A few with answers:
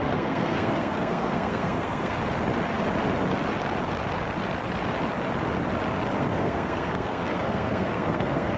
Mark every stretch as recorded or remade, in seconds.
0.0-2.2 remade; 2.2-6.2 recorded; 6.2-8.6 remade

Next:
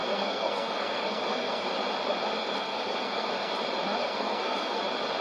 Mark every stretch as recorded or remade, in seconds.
0.0-1.7 remade; 1.7-2.4 recorded; 2.4-3.5 remade; 3.5-4.0 recorded; 4.0-4.8 remade; 4.8-5.2 recorded

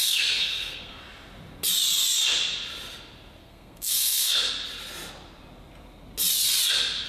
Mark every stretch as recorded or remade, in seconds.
0.0-1.0 remade; 1.0-3.4 recorded; 3.4-4.5 remade; 4.5-7.1 recorded